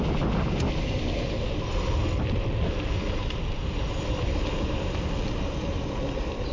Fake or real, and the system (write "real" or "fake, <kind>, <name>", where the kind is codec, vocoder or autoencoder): real